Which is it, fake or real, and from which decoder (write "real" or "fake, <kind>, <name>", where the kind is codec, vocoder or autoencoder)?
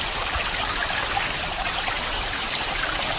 fake, vocoder, BigVGAN v2